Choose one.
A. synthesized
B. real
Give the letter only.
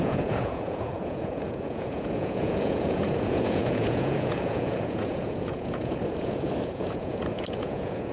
A